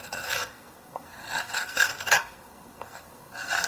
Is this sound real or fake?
fake